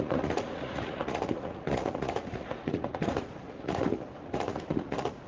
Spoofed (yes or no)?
yes